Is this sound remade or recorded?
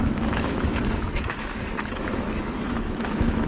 remade